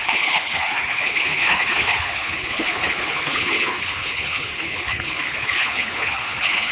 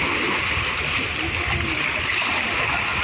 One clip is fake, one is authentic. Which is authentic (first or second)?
second